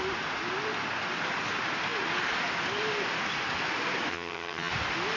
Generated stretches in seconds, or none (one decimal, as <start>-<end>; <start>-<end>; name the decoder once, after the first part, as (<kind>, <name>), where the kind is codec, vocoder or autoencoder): 4.1-4.7 (vocoder, HiFi-GAN)